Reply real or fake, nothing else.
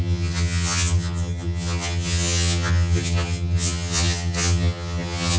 fake